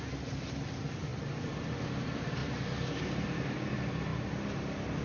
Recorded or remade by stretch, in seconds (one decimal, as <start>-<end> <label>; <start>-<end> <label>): 0.0-5.0 recorded

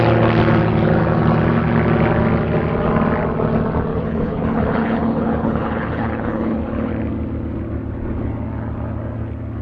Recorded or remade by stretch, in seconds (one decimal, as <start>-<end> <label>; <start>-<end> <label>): 0.0-3.9 recorded; 3.9-6.9 remade; 6.9-9.6 recorded

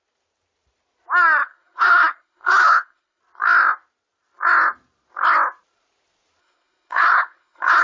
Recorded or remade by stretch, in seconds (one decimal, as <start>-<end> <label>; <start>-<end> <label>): 0.0-1.4 recorded; 1.4-3.2 remade; 3.2-6.4 recorded; 6.4-7.8 remade

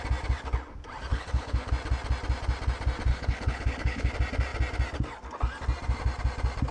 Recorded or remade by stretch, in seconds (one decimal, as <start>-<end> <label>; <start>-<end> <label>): 0.0-1.1 recorded; 1.1-1.7 remade; 1.7-3.1 recorded; 3.1-4.1 remade; 4.1-6.7 recorded

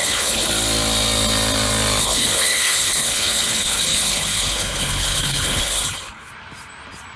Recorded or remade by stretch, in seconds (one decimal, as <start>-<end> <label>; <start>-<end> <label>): 0.0-0.5 remade; 0.5-2.0 recorded; 2.0-6.3 remade; 6.3-7.2 recorded

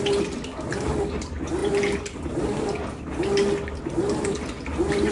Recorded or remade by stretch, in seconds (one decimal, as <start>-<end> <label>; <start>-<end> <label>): 0.0-5.1 recorded

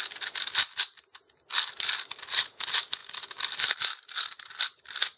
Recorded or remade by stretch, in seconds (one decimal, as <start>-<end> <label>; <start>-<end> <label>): 0.0-5.2 recorded